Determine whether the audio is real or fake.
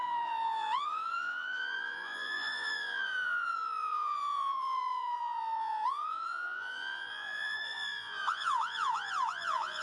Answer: fake